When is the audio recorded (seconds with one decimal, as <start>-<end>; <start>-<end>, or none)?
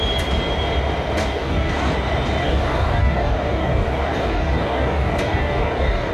0.0-1.2; 1.9-2.4